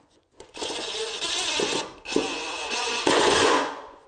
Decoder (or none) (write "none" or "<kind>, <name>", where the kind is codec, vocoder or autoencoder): vocoder, Vocos